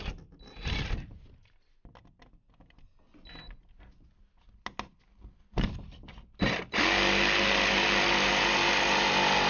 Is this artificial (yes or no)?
no